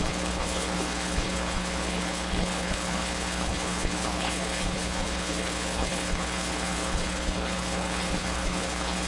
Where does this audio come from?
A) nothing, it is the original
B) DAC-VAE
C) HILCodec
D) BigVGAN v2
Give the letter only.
C